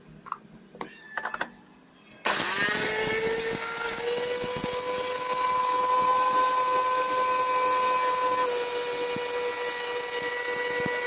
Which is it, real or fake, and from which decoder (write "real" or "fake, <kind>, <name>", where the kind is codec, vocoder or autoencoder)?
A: real